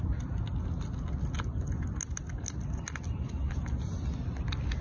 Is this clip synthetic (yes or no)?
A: no